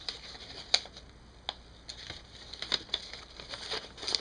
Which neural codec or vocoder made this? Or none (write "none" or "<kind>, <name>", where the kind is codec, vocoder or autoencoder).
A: none